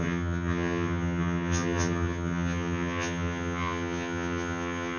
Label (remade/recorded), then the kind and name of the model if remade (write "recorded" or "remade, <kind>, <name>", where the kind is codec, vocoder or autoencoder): remade, vocoder, HiFi-GAN